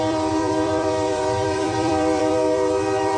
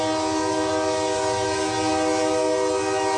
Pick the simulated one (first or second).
first